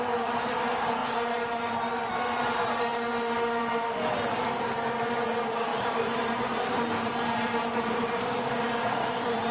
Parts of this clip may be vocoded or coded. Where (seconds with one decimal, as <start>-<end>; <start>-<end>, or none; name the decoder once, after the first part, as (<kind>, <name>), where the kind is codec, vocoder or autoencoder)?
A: 1.0-2.0 (vocoder, BigVGAN v2); 5.7-8.6